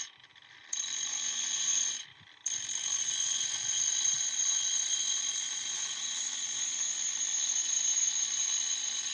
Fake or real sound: fake